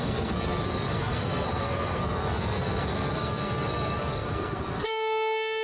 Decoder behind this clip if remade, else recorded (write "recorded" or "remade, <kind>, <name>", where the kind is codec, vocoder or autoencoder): remade, codec, SNAC